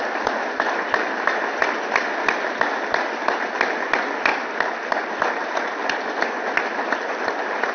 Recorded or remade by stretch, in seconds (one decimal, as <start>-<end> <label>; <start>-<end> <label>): 0.0-4.3 recorded; 4.3-5.1 remade; 5.1-7.7 recorded